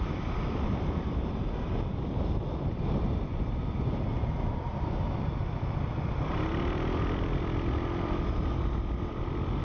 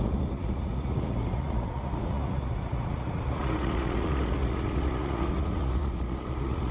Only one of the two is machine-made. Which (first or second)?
second